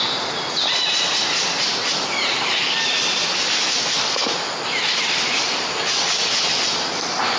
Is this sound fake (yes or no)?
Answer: no